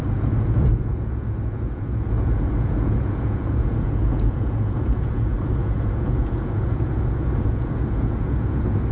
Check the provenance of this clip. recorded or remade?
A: remade